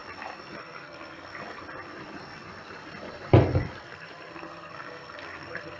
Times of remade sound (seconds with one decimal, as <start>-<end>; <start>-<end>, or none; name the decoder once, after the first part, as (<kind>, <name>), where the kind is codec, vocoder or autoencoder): 0.6-1.3 (codec, SNAC); 3.8-5.8